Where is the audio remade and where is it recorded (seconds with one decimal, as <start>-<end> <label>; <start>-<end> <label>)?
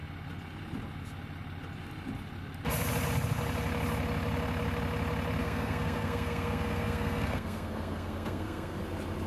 0.0-5.4 recorded; 5.4-8.8 remade; 8.8-9.3 recorded